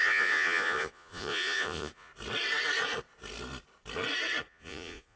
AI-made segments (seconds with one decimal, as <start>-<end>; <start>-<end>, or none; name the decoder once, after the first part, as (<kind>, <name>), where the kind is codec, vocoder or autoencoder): 0.0-2.1 (vocoder, Vocos); 4.4-5.2